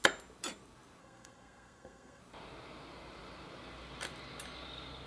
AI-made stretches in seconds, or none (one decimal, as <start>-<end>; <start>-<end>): 1.0-2.2